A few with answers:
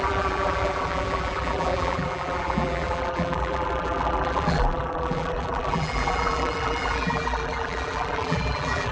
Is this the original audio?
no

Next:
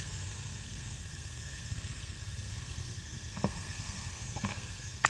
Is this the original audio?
no